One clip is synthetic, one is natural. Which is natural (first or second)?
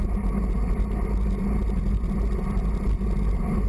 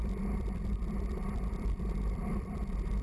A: first